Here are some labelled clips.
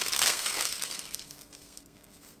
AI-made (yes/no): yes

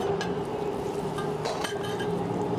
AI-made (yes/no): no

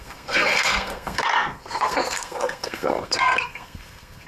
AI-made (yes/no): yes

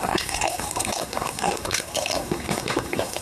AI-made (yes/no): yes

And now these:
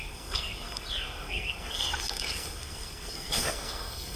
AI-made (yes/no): yes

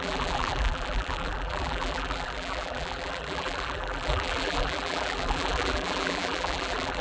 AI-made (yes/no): yes